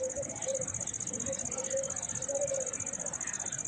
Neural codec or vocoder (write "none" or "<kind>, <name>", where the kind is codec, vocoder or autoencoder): none